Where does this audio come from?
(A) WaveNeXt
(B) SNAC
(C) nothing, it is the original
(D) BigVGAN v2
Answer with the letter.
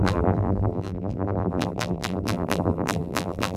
D